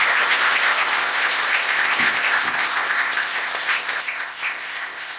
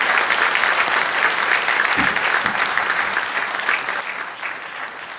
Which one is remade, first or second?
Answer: first